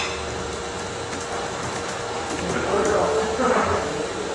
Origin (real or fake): real